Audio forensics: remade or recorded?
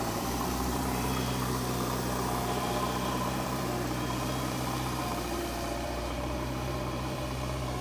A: remade